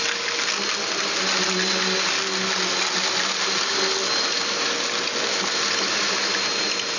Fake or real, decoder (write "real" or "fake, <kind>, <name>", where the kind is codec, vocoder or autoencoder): real